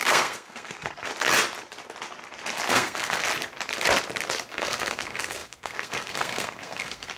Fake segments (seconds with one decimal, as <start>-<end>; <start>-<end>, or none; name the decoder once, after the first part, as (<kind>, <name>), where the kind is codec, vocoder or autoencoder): 0.0-1.1 (codec, SNAC); 2.7-3.3; 4.5-7.2